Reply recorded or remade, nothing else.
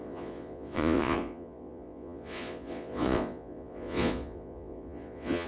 remade